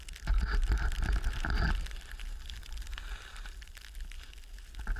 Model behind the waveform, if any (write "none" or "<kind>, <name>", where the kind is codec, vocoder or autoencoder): none